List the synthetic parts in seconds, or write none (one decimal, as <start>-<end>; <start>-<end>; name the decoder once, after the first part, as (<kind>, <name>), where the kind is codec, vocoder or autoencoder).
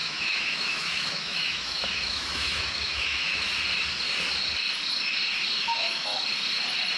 0.0-3.5 (autoencoder, DAC-VAE); 5.6-6.1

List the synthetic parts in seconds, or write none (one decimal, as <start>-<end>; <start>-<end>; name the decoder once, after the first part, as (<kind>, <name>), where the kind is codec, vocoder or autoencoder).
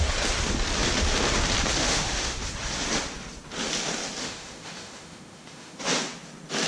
1.8-2.4 (autoencoder, DAC-VAE); 4.2-5.8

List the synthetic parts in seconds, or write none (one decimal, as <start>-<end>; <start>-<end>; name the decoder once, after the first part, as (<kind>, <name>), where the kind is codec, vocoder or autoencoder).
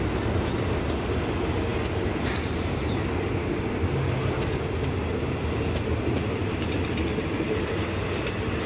none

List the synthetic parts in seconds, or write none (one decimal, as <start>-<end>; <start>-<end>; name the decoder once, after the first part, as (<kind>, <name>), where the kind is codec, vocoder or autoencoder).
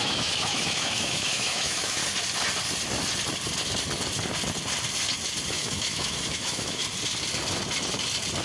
0.0-2.0 (autoencoder, DAC-VAE); 5.5-6.8